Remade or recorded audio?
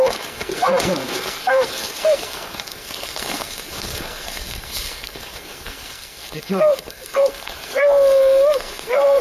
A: remade